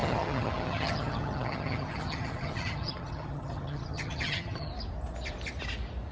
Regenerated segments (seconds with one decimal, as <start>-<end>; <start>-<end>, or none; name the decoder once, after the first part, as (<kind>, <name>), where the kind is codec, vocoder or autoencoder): 0.0-4.7 (vocoder, HiFi-GAN)